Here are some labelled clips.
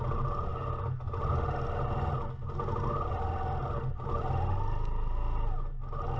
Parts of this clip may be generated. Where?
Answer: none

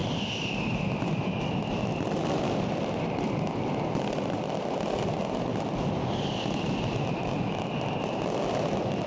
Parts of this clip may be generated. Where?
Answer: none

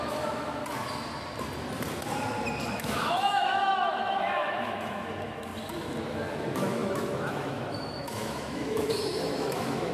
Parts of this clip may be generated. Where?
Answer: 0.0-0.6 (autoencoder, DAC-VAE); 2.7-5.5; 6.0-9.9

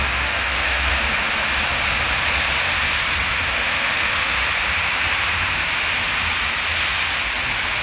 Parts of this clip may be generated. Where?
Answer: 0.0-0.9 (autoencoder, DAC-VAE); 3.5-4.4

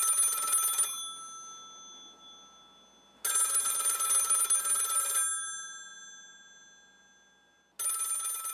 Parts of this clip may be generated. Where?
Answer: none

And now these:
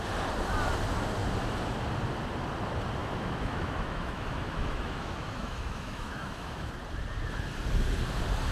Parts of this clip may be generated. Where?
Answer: 3.0-6.7 (autoencoder, DAC-VAE)